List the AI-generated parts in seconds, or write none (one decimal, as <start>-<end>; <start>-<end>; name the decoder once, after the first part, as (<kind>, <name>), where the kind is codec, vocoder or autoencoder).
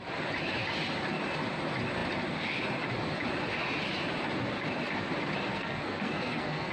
5.5-6.7 (codec, SNAC)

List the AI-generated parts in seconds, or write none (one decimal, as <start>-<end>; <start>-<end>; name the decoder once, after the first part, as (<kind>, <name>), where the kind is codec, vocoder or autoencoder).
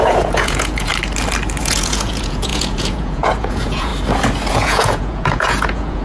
0.0-0.9 (vocoder, Vocos); 1.6-3.9; 4.5-6.0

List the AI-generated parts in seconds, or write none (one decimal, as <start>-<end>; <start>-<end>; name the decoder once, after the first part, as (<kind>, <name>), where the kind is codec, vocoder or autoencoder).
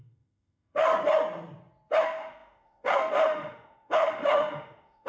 0.0-0.9 (autoencoder, DAC-VAE); 2.0-5.1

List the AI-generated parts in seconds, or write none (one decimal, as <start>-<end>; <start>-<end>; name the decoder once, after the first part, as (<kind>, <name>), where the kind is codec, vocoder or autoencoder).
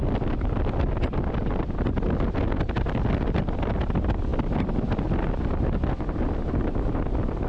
none